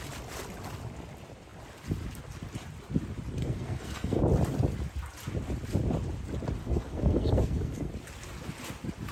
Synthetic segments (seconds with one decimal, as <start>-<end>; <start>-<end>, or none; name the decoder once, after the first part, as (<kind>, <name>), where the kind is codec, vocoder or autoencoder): 3.4-4.2 (codec, SNAC); 6.6-7.9